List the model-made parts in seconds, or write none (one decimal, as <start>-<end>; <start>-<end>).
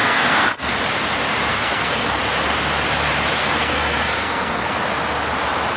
0.0-0.7; 1.5-2.2; 3.4-4.8